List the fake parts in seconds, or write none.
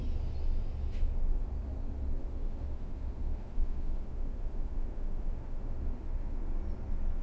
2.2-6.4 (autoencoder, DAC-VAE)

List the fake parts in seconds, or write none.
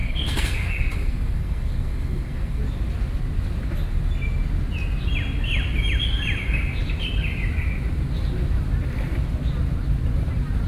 0.0-2.6 (codec, SNAC)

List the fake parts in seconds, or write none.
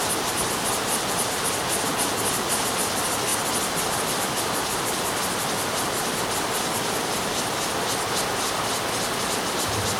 none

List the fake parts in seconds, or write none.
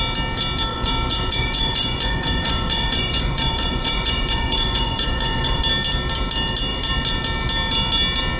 0.7-5.6 (vocoder, Vocos)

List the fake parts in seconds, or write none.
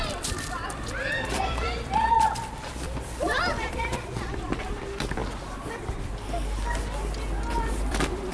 0.0-5.2 (vocoder, BigVGAN v2); 7.6-8.3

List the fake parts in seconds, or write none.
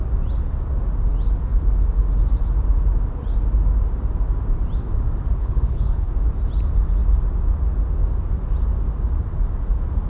5.4-6.1 (codec, HILCodec)